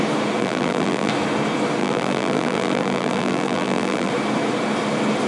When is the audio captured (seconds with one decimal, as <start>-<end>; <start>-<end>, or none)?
0.0-0.4; 1.1-1.8; 4.1-5.3